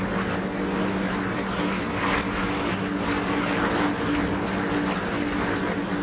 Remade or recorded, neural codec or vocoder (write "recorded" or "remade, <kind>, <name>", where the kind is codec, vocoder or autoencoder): recorded